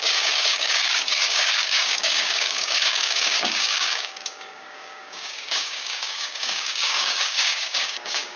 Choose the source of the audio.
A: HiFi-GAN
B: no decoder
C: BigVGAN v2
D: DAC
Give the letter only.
D